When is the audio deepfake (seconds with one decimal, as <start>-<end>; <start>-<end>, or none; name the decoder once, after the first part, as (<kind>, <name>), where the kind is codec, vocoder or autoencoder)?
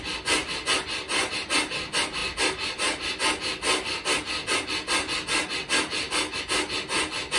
none